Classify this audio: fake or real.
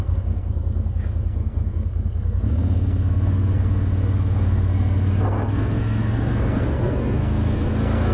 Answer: fake